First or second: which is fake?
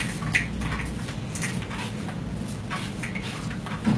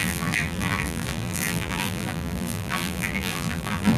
second